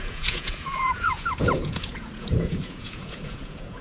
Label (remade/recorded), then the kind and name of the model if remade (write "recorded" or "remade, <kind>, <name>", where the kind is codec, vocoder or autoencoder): remade, vocoder, Vocos